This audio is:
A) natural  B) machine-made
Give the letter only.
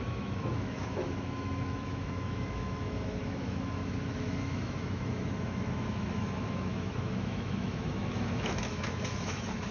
B